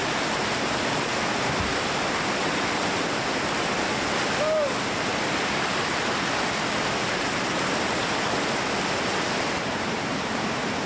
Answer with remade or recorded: recorded